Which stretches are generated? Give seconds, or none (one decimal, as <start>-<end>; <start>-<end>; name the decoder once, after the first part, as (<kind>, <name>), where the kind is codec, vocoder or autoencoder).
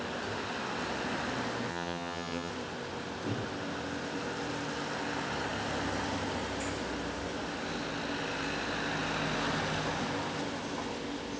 1.7-2.5 (vocoder, HiFi-GAN)